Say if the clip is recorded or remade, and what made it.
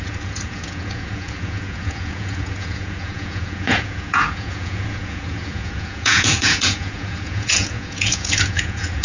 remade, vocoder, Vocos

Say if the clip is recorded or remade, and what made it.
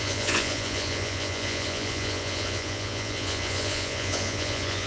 remade, vocoder, Vocos